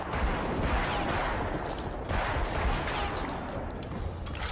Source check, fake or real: real